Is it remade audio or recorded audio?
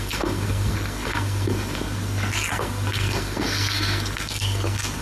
remade